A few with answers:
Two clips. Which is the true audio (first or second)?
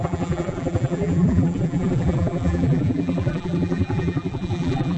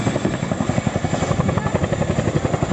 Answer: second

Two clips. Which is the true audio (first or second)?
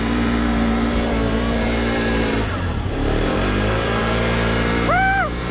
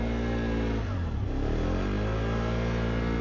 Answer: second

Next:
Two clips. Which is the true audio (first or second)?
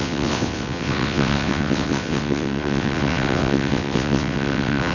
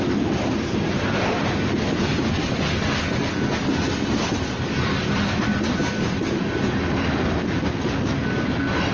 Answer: second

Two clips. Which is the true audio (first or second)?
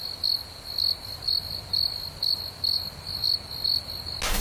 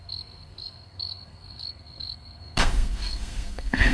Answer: first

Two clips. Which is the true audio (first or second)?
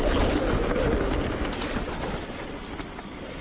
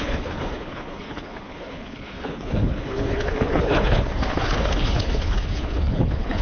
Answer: first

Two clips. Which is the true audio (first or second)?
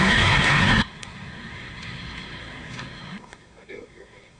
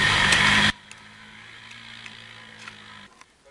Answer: second